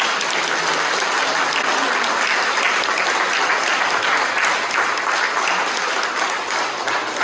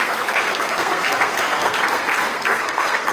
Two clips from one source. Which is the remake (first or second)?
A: second